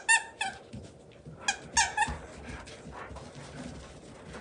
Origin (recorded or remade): recorded